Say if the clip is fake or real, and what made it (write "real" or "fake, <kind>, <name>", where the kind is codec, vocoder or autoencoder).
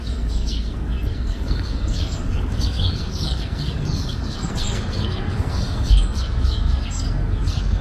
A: fake, codec, SNAC